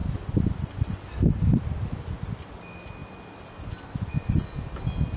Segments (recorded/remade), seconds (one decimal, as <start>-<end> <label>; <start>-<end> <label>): 0.0-5.2 recorded